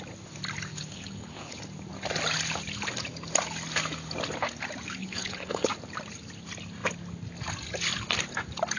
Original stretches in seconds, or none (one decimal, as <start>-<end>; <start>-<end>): 0.0-0.7; 1.6-5.0; 5.7-8.8